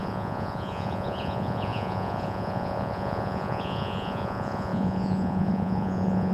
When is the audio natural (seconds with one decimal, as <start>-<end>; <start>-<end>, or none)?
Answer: none